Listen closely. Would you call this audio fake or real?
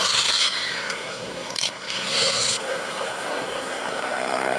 fake